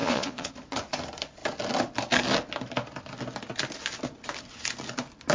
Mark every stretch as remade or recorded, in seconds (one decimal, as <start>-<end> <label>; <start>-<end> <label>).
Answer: 0.0-0.5 remade; 0.5-5.3 recorded